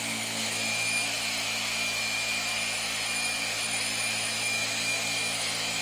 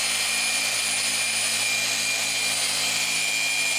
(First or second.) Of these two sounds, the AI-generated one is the first